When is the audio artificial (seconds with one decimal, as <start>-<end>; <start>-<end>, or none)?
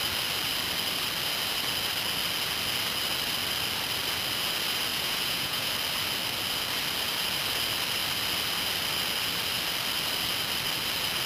4.9-5.7